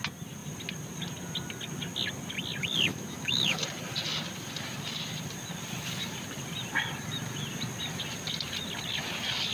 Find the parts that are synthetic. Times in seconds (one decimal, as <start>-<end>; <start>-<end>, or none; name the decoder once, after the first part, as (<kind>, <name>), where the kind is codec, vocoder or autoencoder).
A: 2.9-3.6 (autoencoder, DAC-VAE)